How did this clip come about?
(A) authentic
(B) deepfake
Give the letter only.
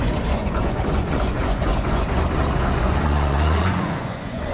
B